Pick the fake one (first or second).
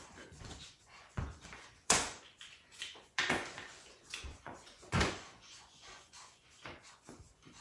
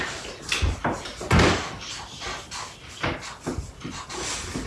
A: first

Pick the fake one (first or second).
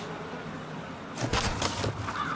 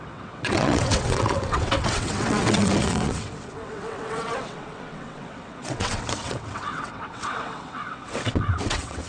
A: second